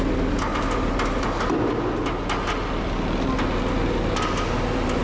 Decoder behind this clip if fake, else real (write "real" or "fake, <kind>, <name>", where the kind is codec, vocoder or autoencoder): real